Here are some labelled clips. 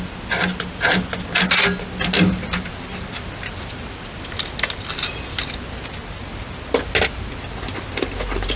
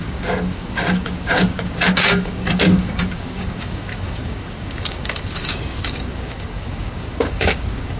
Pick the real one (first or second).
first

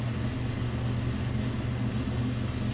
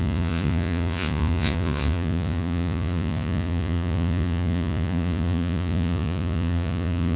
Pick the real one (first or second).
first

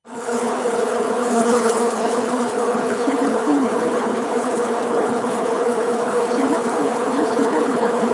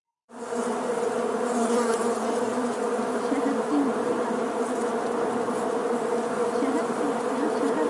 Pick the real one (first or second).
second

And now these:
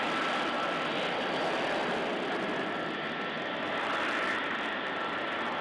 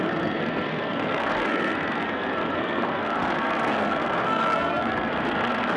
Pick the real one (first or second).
first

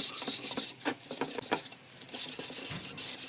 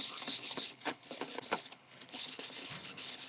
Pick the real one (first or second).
first